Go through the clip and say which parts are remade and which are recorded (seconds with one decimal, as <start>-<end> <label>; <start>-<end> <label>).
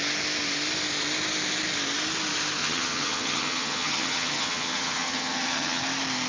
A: 0.0-2.6 recorded; 2.6-5.8 remade; 5.8-6.3 recorded